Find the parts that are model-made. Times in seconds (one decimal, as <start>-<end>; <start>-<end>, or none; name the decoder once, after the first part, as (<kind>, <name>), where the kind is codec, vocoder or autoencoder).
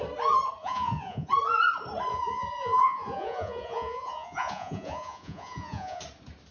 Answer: 0.6-1.3 (vocoder, Vocos); 2.1-6.0